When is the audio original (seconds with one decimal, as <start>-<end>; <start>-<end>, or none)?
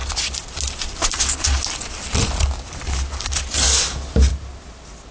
0.0-5.1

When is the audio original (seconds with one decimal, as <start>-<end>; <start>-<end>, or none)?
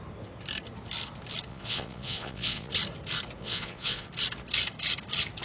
0.0-1.5; 2.7-3.4; 4.1-5.4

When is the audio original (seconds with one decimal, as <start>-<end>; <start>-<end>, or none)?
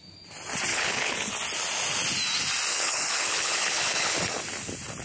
0.0-0.7; 1.3-2.7; 4.2-5.0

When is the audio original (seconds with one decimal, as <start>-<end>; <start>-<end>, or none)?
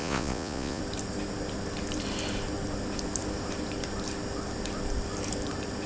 0.8-5.9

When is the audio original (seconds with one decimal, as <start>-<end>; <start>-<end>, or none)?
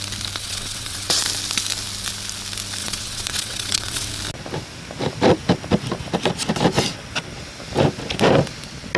0.0-0.4; 1.2-2.8; 4.1-9.0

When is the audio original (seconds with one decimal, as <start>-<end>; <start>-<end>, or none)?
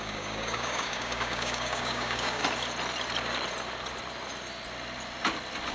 2.4-5.7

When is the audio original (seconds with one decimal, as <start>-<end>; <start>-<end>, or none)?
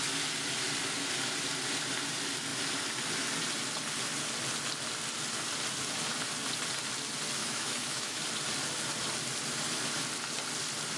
0.0-7.4; 8.2-11.0